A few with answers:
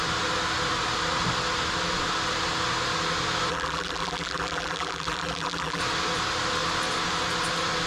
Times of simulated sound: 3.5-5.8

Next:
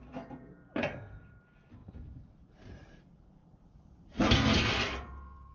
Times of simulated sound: 0.0-3.4

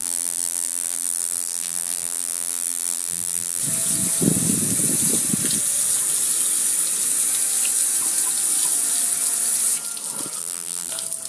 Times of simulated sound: 0.0-3.6; 10.4-10.9

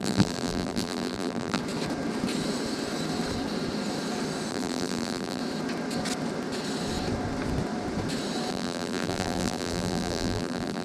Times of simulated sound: 0.0-1.6; 4.5-5.4; 8.5-10.8

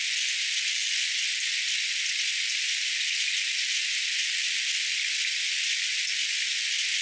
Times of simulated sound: none

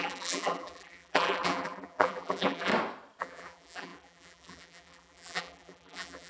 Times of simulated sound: 0.0-2.7; 3.2-6.3

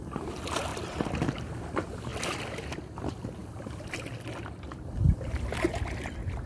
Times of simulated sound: 0.7-1.3; 3.4-4.3

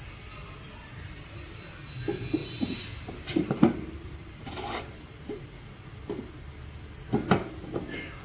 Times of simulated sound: 0.8-1.5; 2.4-5.4